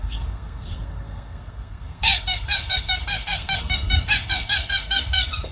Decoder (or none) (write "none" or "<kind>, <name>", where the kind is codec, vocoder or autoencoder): codec, SNAC